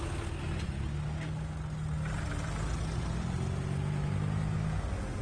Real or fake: real